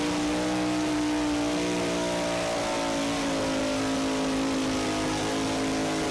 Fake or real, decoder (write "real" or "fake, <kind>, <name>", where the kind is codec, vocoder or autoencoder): real